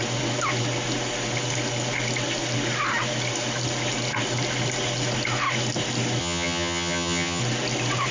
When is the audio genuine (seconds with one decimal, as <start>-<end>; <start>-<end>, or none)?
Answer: 0.0-6.2; 7.4-8.1